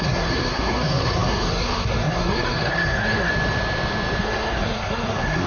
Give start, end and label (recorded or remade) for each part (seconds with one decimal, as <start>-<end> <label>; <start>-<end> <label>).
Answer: 0.0-3.3 remade; 3.3-4.2 recorded; 4.2-5.5 remade